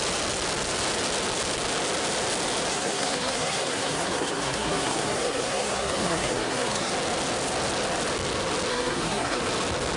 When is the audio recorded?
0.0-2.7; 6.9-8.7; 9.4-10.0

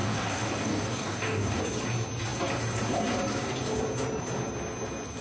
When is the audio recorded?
1.6-5.2

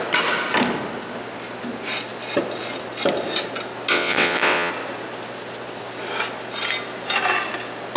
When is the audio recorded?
0.0-3.9; 4.7-8.0

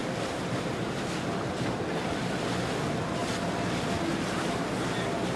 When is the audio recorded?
0.0-5.4

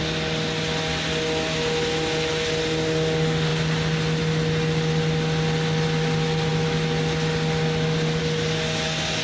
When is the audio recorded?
0.0-9.2